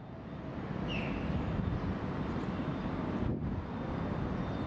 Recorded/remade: recorded